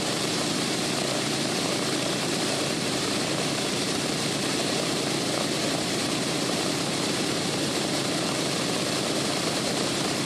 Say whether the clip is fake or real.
fake